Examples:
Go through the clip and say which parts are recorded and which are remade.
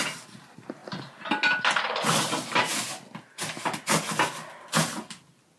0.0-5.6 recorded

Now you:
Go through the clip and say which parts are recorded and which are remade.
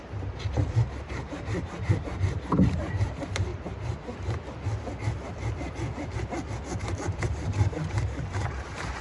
0.0-3.5 remade; 3.5-7.2 recorded; 7.2-9.0 remade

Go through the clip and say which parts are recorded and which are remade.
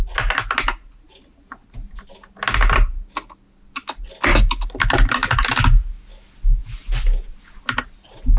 0.0-8.4 recorded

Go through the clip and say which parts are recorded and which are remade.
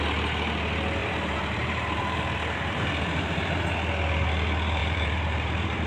0.0-1.0 recorded; 1.0-3.6 remade; 3.6-4.8 recorded; 4.8-5.9 remade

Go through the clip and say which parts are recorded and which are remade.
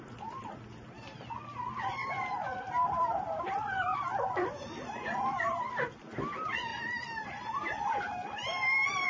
0.0-9.1 remade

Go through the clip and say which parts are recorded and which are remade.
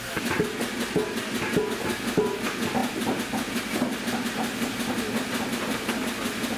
0.0-6.6 recorded